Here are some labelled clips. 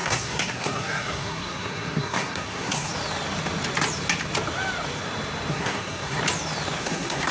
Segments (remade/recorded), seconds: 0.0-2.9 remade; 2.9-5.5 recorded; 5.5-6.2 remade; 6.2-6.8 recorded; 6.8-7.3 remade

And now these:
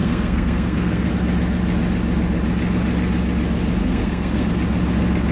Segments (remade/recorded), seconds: 0.0-1.1 remade; 1.1-3.8 recorded; 3.8-4.5 remade; 4.5-5.3 recorded